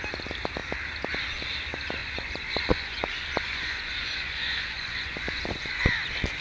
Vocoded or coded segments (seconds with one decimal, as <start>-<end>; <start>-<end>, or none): 2.0-5.8